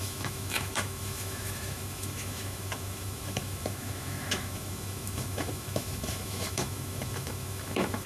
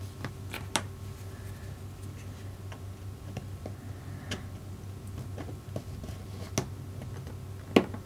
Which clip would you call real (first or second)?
second